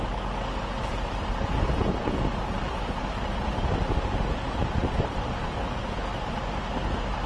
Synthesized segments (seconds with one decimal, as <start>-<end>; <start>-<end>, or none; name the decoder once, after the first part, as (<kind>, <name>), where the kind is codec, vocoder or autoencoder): 0.9-5.3 (vocoder, BigVGAN v2)